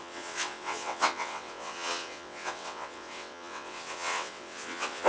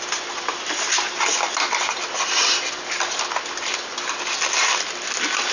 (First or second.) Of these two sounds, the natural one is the second